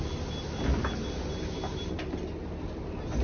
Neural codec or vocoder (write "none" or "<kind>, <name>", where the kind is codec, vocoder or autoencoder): none